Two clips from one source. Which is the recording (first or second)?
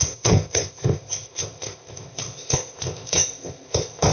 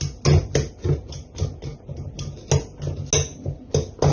second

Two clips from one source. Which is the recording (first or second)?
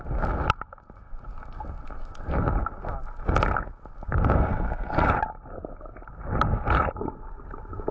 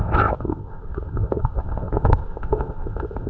first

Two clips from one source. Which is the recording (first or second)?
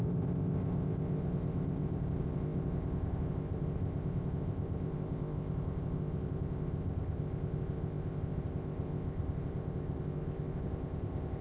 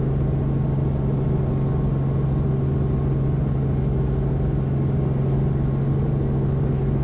second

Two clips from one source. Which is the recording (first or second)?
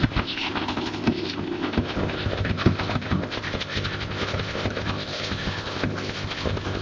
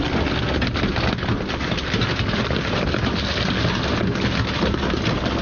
second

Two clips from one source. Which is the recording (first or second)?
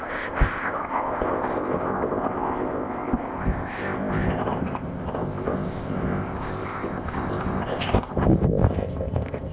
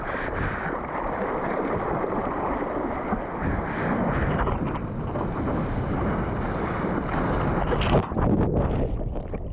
second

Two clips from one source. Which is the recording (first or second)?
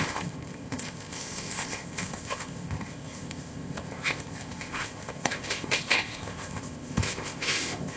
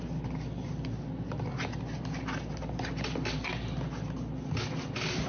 second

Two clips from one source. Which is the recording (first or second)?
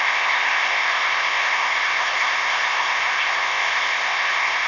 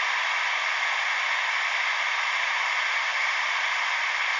second